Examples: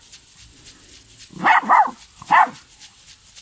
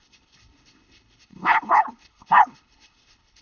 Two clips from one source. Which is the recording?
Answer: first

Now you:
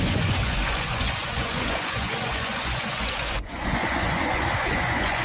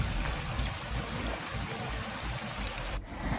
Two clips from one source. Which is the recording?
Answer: second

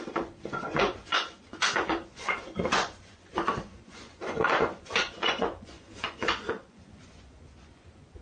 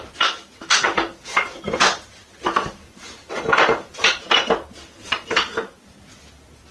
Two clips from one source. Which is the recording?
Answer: second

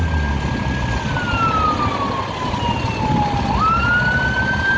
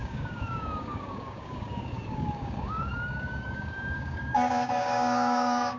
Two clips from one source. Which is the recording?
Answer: first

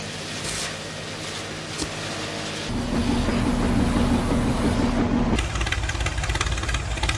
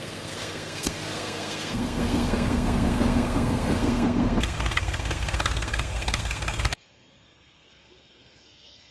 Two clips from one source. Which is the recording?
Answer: first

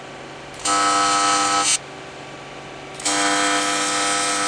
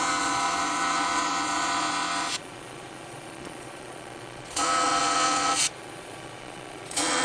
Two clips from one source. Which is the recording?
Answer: first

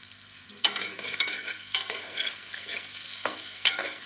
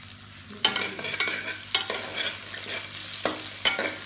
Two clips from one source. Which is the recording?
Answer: second